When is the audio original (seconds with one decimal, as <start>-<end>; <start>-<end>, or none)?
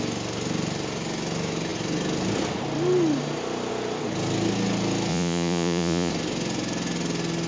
0.0-5.1; 6.1-7.5